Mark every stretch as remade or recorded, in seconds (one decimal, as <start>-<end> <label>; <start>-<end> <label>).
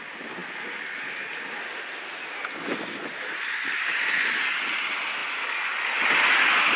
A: 0.0-6.8 recorded